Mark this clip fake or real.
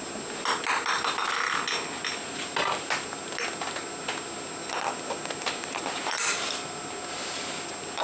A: real